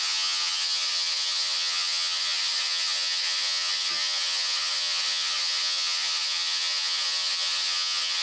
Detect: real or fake fake